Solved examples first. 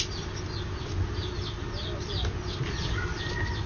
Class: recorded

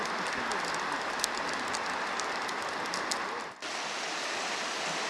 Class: recorded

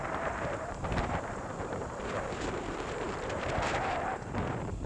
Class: remade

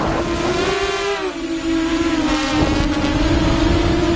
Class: recorded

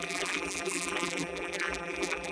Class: remade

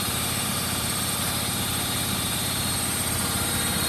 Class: remade